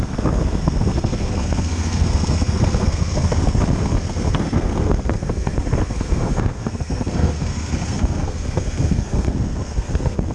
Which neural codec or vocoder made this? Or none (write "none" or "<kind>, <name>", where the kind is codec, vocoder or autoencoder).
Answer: codec, SNAC